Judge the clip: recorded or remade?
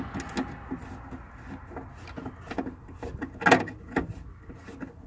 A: recorded